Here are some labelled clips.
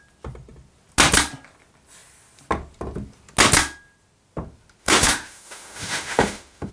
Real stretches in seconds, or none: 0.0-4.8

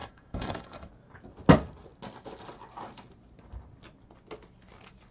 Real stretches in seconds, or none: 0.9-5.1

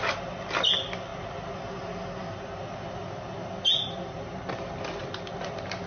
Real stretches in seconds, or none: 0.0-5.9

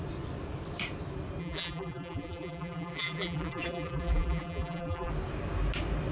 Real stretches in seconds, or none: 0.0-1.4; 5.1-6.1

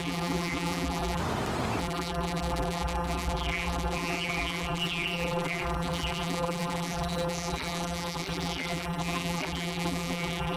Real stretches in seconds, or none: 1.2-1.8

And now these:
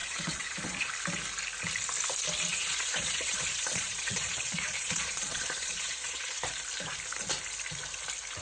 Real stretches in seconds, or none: 0.9-2.5; 6.5-8.4